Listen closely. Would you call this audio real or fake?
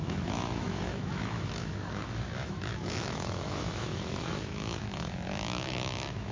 fake